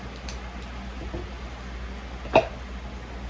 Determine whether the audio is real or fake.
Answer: real